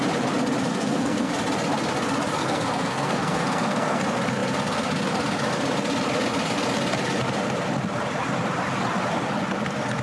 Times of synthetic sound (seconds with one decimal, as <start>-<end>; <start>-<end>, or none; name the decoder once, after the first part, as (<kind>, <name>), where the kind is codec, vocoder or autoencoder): 0.7-1.3 (codec, SNAC); 2.4-4.0